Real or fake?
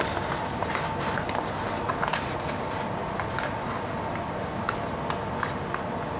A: real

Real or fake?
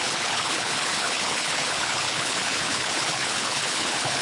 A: fake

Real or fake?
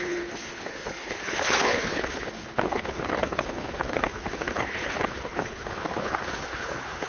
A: fake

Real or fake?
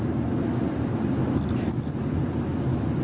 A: real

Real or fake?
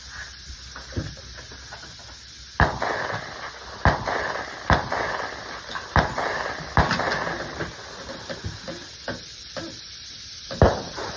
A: real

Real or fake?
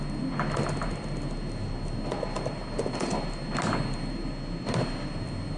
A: real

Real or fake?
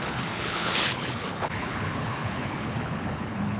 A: fake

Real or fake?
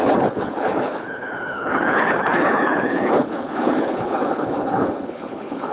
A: fake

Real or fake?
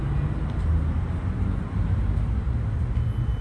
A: real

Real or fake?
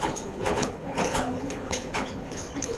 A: fake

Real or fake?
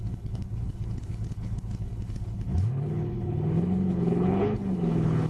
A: fake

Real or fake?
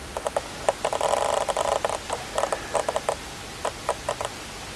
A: real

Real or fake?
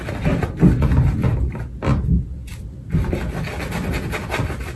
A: real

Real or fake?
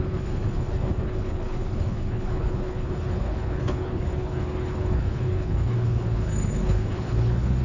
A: fake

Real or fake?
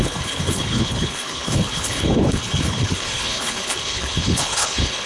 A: fake